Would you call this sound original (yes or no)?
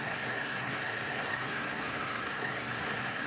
no